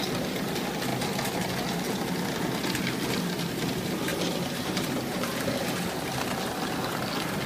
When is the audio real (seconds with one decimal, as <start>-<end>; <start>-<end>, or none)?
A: 0.0-4.1; 5.5-7.5